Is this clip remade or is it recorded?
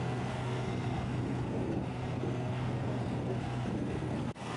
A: remade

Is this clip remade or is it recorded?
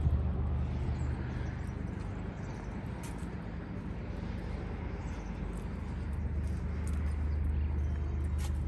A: recorded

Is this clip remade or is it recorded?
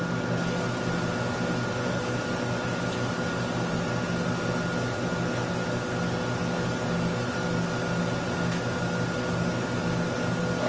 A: recorded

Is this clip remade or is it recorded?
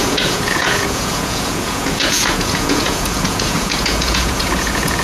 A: remade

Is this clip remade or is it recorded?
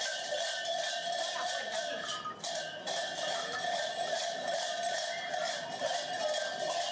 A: remade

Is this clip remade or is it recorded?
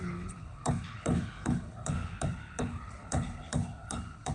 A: remade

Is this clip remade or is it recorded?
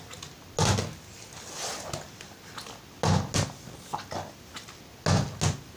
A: recorded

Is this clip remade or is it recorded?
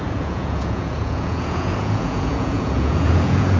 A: remade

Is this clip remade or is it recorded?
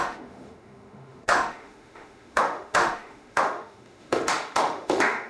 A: remade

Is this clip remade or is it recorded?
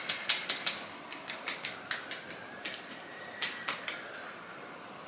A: recorded